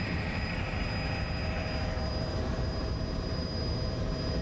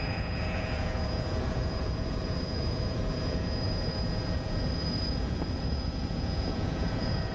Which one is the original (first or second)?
first